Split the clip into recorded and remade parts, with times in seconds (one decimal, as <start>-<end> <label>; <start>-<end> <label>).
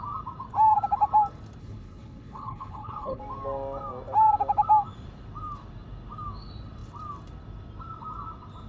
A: 0.0-1.6 recorded; 1.6-3.2 remade; 3.2-8.7 recorded